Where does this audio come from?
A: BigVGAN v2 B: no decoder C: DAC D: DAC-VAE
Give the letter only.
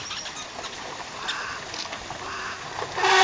B